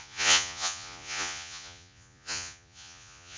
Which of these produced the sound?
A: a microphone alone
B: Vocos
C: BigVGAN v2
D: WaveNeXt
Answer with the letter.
B